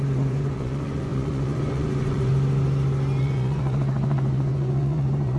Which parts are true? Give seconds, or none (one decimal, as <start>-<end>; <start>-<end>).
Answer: 2.3-3.2